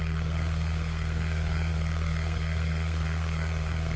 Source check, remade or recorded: remade